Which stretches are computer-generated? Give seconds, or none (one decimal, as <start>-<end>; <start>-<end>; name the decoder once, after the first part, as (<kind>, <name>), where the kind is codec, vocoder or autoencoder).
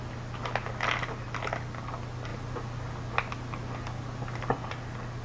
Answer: none